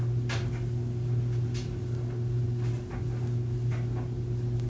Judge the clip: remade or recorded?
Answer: recorded